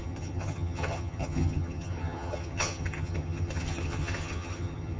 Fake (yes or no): yes